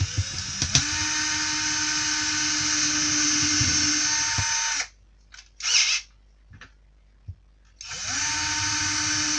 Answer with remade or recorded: recorded